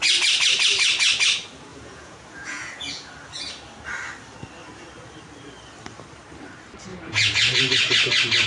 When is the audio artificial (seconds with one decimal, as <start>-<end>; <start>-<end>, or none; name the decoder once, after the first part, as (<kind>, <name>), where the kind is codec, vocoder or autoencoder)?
1.7-3.1 (vocoder, Vocos); 6.9-7.6

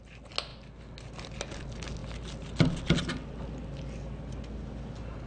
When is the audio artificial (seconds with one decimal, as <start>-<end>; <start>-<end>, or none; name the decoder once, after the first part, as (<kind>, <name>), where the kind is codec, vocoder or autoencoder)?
none

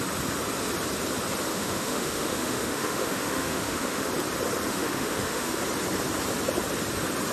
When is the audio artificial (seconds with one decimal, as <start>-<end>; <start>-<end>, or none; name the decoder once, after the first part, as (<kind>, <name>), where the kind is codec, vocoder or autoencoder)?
1.5-4.1 (autoencoder, DAC-VAE); 4.7-5.6

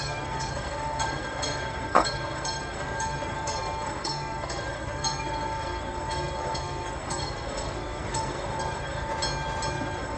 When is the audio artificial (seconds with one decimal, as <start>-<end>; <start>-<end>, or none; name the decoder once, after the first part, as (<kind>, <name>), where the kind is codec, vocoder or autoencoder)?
0.0-9.1 (codec, SNAC); 9.7-10.2

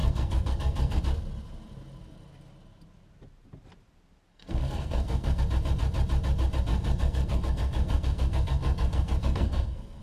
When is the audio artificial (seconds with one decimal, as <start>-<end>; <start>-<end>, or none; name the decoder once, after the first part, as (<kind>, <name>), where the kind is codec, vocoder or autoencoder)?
0.0-1.0 (codec, SNAC); 4.3-5.4; 6.7-10.0